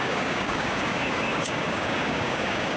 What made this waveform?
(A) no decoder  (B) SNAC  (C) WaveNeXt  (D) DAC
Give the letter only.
D